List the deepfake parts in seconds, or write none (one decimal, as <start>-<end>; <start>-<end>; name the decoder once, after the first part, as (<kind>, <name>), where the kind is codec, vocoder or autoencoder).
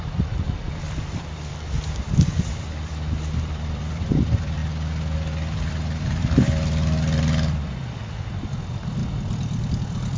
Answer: 0.0-4.6 (vocoder, BigVGAN v2); 5.7-9.0